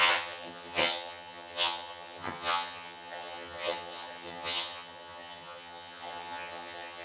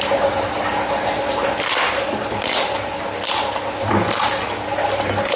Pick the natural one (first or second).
second